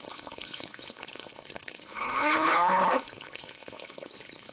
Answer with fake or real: fake